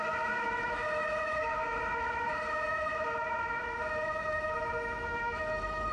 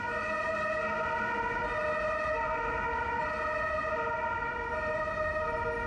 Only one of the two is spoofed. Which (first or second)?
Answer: first